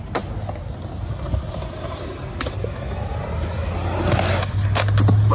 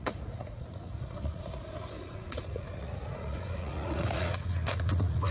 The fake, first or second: second